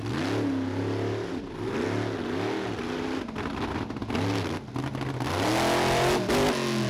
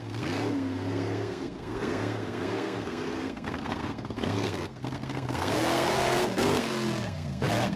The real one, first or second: first